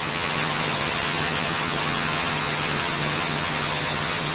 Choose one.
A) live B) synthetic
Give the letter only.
B